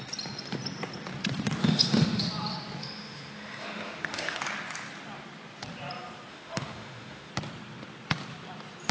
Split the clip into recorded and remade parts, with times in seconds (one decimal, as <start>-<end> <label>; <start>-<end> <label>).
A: 0.0-1.6 recorded; 1.6-2.2 remade; 2.2-2.8 recorded; 2.8-4.4 remade; 4.4-6.3 recorded; 6.3-7.3 remade; 7.3-8.9 recorded